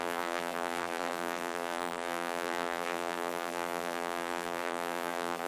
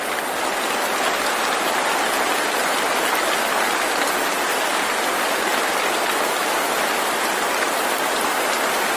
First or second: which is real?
second